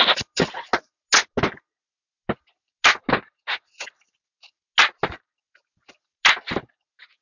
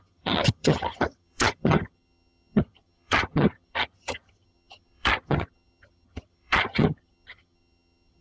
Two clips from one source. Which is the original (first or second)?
first